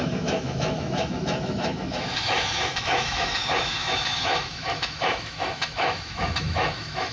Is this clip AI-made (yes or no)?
yes